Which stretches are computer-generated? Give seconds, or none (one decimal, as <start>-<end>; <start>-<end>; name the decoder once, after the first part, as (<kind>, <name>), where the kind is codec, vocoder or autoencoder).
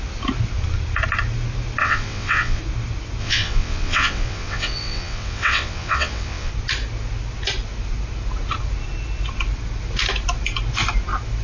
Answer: 1.8-2.6 (vocoder, WaveNeXt); 3.2-6.5